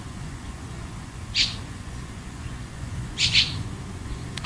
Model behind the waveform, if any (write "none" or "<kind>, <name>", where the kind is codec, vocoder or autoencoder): vocoder, Vocos